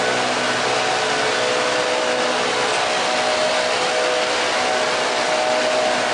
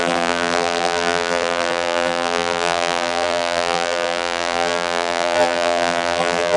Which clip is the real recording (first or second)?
first